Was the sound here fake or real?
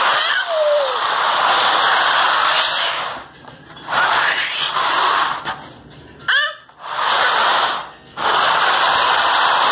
real